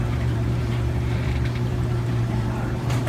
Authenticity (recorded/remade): remade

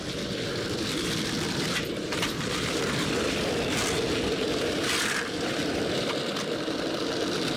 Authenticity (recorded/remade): remade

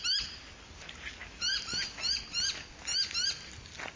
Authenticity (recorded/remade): recorded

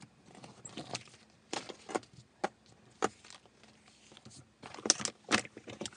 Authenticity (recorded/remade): recorded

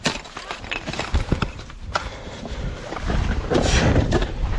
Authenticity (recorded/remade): remade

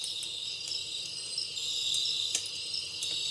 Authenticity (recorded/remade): recorded